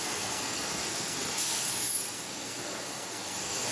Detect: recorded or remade remade